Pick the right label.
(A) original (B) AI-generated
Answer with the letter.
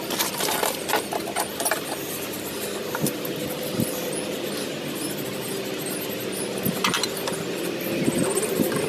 A